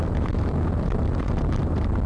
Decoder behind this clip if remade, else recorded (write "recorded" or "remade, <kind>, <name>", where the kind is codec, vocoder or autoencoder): remade, vocoder, BigVGAN v2